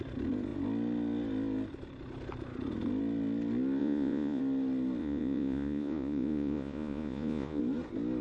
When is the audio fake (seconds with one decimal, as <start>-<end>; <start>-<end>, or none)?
3.8-4.4; 5.0-7.6